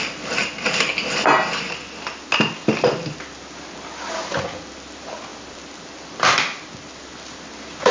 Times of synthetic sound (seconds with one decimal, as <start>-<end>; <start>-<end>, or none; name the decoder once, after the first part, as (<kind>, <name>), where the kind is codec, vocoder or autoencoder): none